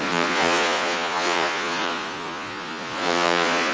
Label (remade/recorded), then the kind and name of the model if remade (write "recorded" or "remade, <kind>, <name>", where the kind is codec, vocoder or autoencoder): remade, vocoder, Vocos